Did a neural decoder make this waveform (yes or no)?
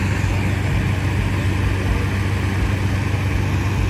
no